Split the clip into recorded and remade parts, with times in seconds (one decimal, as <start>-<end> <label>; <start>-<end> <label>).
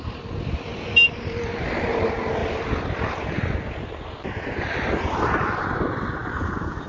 0.0-6.9 recorded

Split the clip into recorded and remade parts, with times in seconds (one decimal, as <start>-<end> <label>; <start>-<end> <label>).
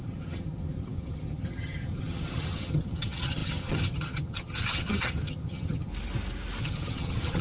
0.0-5.9 remade; 5.9-6.6 recorded; 6.6-7.4 remade